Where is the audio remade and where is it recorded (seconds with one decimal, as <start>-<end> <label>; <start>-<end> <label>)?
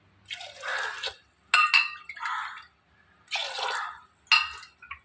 0.0-5.0 recorded